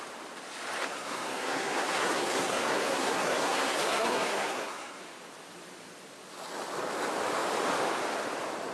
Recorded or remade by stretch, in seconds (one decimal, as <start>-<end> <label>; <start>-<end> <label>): 0.0-0.8 recorded; 0.8-5.0 remade; 5.0-8.7 recorded